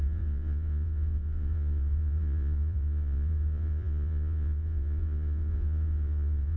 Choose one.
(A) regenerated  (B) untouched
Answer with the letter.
A